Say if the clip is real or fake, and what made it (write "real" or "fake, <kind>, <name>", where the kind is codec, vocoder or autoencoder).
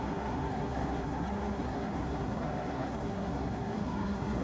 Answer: fake, codec, SNAC